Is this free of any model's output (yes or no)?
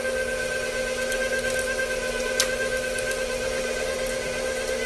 yes